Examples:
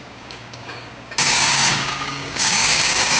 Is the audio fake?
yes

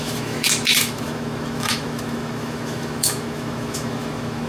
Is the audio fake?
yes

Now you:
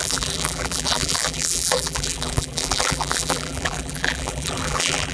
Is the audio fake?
yes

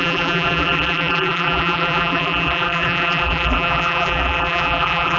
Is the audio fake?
yes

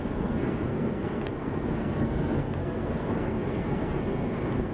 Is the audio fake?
yes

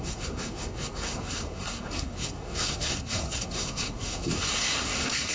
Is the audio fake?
yes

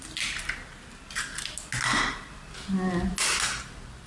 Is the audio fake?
no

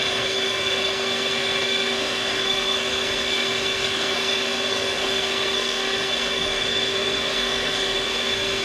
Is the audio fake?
yes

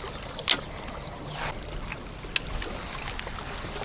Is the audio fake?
no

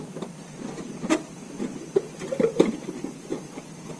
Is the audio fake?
no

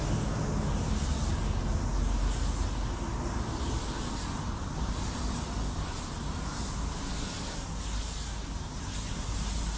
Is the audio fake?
no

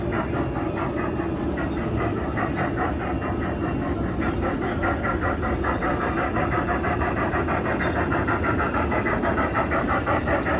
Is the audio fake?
no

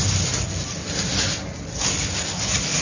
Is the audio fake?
no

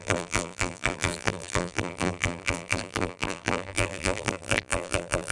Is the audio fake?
yes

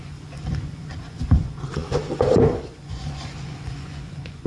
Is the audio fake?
yes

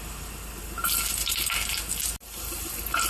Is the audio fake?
no